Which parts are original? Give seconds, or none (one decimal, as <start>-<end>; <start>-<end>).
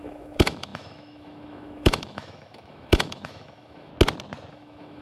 3.9-4.5